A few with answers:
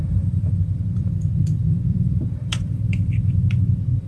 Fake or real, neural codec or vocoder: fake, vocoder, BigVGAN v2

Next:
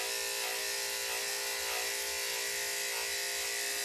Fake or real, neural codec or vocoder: real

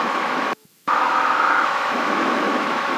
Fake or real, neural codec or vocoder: fake, autoencoder, DAC-VAE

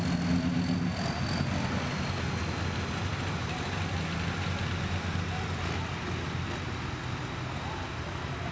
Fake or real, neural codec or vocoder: real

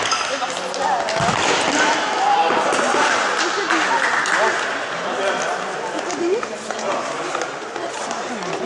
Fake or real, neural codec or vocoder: real